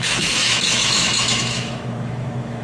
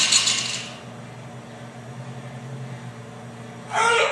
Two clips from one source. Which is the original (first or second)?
second